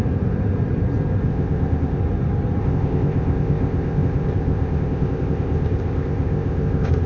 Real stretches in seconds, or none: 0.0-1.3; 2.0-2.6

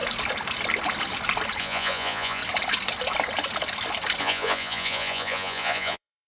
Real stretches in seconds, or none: 0.0-1.6; 2.4-4.2